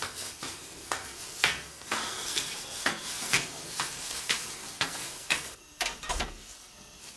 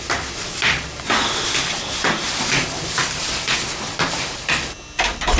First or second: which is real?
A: second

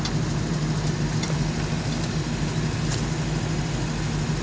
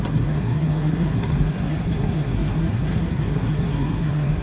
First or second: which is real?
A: first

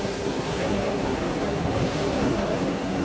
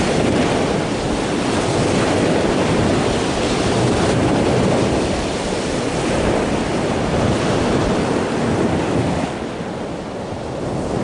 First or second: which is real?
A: second